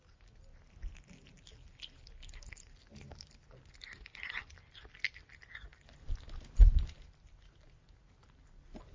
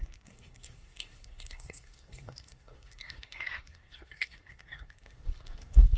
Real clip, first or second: first